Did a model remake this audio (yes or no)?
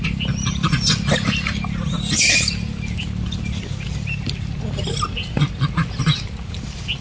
no